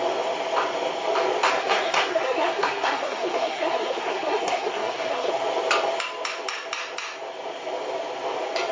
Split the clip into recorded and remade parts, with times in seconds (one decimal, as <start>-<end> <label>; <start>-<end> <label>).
0.0-1.6 recorded; 1.6-5.3 remade; 5.3-8.7 recorded